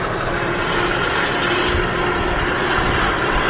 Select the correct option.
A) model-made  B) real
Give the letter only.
B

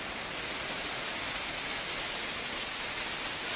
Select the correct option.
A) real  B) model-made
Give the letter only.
A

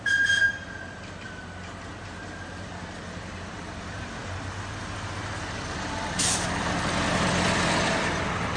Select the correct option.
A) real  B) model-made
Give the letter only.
A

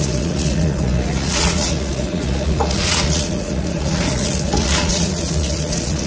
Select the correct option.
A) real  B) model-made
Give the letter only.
B